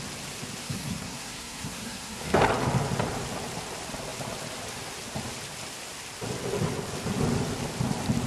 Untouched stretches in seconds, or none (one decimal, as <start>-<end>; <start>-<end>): 0.0-0.6; 2.4-8.3

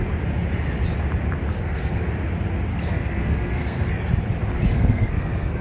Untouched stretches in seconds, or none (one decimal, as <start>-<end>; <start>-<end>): 0.0-1.5; 2.1-2.7; 3.9-4.7

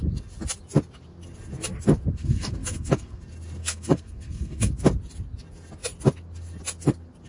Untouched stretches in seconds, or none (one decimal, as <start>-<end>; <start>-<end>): 0.0-2.2; 3.2-3.6; 4.7-7.3

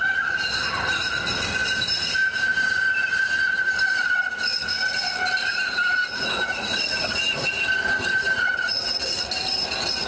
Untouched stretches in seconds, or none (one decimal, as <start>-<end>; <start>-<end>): 0.0-10.1

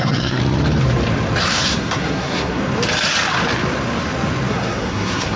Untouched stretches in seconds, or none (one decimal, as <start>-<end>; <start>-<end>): 0.4-1.4; 2.6-4.5

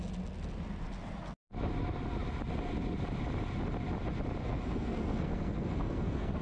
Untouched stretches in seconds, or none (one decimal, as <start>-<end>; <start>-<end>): 0.0-4.4